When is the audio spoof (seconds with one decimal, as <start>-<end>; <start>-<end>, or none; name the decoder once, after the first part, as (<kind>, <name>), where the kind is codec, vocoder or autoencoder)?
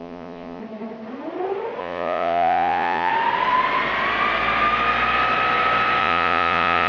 0.0-0.6 (vocoder, Vocos); 1.8-3.1; 6.0-6.9